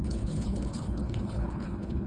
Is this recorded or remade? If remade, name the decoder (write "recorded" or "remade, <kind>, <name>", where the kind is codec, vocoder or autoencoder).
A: remade, codec, HILCodec